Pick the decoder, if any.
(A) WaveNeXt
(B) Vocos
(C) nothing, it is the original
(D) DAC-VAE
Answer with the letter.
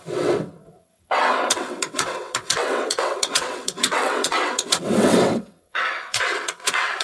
A